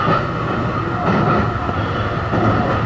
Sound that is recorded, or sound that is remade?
recorded